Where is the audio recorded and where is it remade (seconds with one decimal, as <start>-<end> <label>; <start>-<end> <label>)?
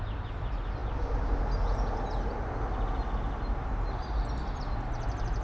0.0-5.4 recorded